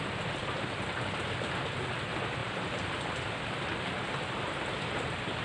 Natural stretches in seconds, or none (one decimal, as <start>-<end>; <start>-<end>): 0.0-0.4; 1.2-2.4; 3.1-5.4